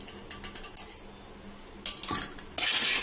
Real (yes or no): yes